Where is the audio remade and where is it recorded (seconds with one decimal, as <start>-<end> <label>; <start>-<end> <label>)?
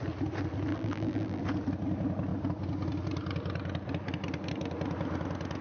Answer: 0.0-0.7 recorded; 0.7-1.4 remade; 1.4-5.6 recorded